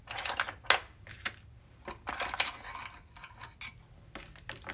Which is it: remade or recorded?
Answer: recorded